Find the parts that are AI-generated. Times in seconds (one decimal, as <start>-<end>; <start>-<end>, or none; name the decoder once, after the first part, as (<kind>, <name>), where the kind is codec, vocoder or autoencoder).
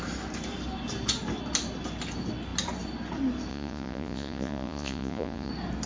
3.5-5.5 (vocoder, Vocos)